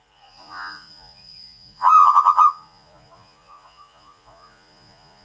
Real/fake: fake